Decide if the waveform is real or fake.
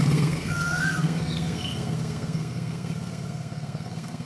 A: fake